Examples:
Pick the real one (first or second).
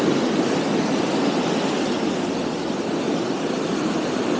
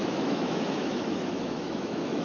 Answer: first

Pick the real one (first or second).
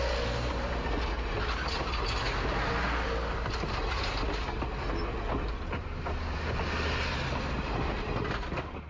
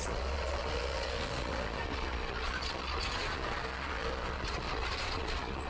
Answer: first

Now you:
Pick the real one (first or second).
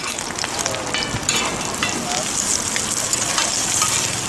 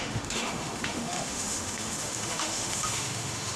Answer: first